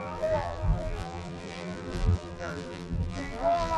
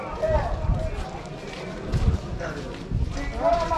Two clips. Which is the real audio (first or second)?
second